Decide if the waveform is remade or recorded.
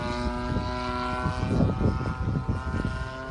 recorded